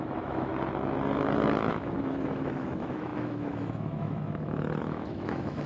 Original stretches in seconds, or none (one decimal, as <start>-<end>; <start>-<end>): 0.5-1.7